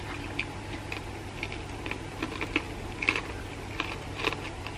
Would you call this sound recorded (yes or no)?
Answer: yes